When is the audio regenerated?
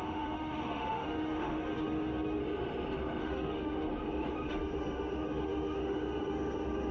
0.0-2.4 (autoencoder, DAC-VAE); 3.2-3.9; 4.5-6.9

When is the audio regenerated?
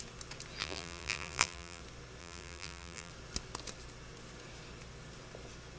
0.6-1.8 (vocoder, BigVGAN v2); 2.2-3.1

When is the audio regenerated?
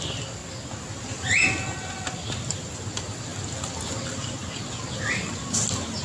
none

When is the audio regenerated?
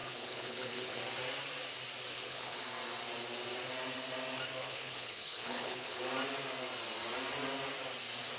0.0-1.0 (codec, HILCodec); 2.1-2.6; 4.6-6.0